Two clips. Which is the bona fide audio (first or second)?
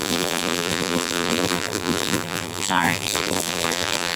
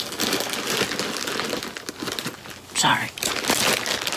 second